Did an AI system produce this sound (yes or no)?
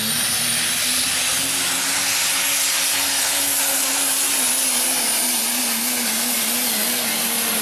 no